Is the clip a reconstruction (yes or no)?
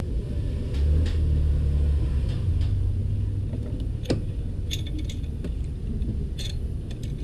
no